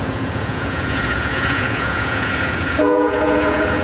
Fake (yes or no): yes